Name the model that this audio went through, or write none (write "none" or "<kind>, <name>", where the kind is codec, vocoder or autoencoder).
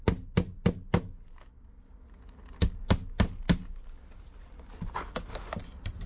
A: none